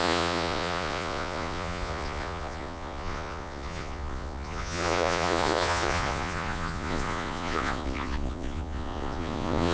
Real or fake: fake